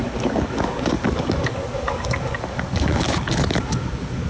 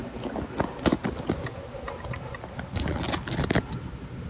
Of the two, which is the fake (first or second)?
first